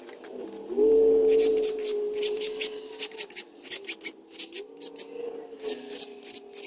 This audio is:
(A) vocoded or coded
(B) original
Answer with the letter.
B